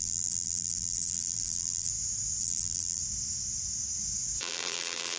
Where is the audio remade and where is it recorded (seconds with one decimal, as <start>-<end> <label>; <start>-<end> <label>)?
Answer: 0.0-1.9 remade; 1.9-2.4 recorded; 2.4-3.0 remade; 3.0-4.4 recorded; 4.4-5.2 remade